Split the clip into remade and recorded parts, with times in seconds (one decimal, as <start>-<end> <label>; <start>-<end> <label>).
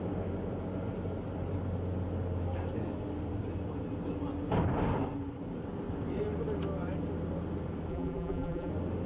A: 0.0-7.9 recorded; 7.9-8.7 remade; 8.7-9.1 recorded